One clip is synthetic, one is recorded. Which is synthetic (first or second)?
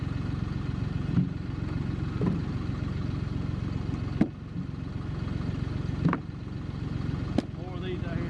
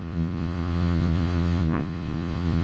second